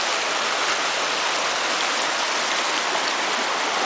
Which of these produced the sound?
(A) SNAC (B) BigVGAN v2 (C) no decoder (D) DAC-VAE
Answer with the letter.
C